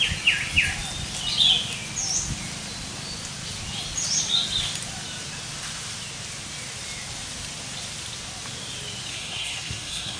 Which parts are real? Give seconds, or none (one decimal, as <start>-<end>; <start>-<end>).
0.0-9.1